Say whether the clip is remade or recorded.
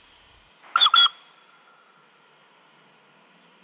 recorded